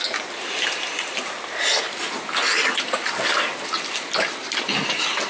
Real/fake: real